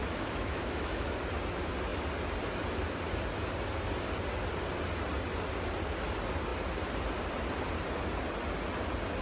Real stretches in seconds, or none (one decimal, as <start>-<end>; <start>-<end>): 1.3-9.2